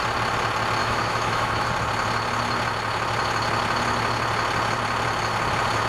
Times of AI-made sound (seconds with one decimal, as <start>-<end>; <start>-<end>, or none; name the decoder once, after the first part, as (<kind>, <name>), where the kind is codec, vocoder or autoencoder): 0.8-1.7 (autoencoder, DAC-VAE)

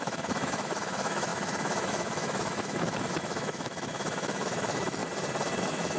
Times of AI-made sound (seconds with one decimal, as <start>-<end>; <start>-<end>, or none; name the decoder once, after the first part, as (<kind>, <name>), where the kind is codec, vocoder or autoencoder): 0.0-5.0 (autoencoder, DAC-VAE); 5.6-6.0

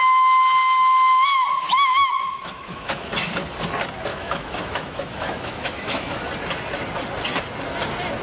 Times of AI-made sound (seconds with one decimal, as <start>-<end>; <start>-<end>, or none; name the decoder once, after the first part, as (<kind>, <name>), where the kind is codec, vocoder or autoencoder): 1.5-3.1 (autoencoder, DAC-VAE); 4.1-6.3

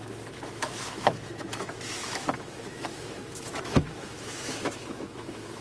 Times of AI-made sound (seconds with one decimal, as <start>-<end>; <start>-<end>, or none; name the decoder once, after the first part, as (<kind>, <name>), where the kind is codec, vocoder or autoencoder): 0.0-5.6 (autoencoder, DAC-VAE)

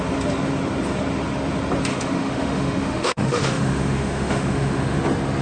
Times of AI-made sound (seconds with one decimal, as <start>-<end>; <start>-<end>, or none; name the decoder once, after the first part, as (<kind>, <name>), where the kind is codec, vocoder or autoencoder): 1.9-5.0 (autoencoder, DAC-VAE)

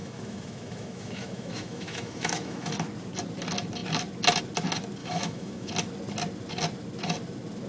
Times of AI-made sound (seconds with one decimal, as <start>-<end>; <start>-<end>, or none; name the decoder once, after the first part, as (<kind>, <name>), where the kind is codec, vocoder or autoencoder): 0.0-2.7 (autoencoder, DAC-VAE); 5.0-5.7

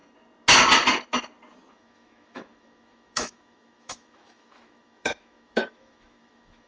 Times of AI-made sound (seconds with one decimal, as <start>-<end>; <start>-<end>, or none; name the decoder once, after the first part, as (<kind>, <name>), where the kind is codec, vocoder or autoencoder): 1.7-6.7 (autoencoder, DAC-VAE)

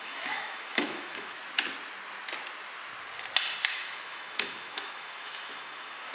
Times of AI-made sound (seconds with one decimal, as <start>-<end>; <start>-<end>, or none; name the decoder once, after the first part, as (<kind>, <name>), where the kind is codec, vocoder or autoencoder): 0.0-1.4 (autoencoder, DAC-VAE); 3.7-6.1